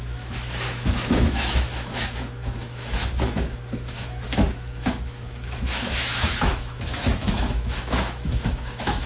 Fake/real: fake